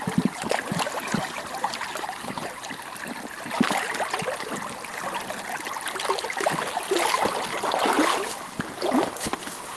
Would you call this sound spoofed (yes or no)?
no